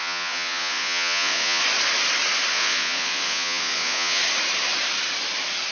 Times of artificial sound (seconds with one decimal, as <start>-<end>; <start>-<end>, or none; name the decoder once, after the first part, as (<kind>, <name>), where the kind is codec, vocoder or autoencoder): 0.0-1.6 (vocoder, Vocos); 2.5-4.2